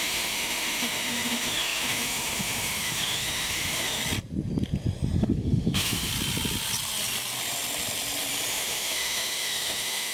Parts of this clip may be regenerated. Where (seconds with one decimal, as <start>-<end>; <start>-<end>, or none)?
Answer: 0.0-4.0; 5.2-6.1; 8.5-10.1